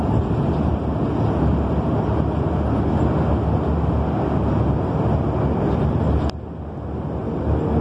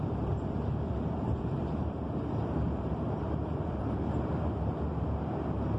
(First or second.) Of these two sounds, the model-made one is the second